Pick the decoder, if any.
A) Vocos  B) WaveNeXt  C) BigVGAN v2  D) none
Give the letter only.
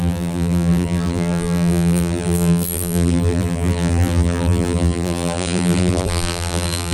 C